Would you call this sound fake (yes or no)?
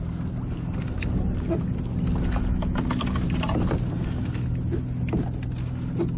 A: no